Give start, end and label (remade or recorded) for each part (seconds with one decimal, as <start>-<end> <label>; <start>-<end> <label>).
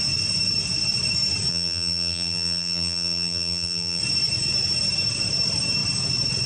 0.0-1.5 recorded; 1.5-4.0 remade; 4.0-6.5 recorded